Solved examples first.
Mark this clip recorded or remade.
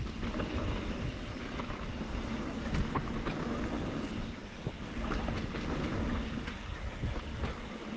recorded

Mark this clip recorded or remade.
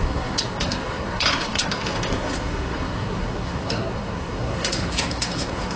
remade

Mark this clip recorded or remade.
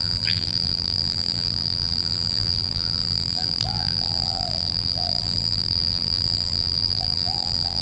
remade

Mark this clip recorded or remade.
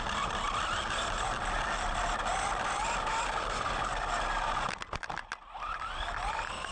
recorded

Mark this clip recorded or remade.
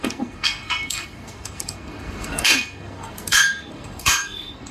remade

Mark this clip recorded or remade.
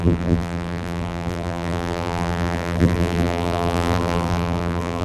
remade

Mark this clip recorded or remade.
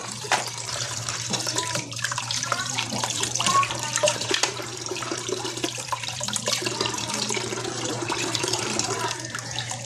remade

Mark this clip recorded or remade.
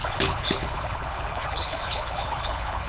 remade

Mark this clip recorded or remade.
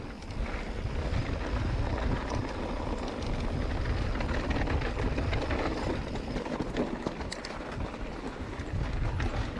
recorded